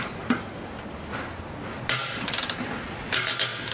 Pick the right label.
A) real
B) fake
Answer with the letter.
A